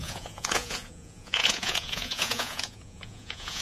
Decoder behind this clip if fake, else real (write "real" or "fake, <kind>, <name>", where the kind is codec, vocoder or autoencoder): fake, vocoder, Vocos